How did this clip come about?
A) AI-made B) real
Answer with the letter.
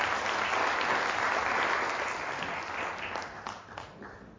B